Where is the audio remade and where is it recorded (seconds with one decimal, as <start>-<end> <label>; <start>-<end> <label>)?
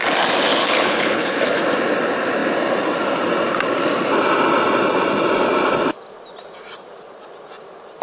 0.0-0.6 recorded; 0.6-1.6 remade; 1.6-8.0 recorded